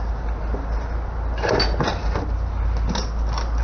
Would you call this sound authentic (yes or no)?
yes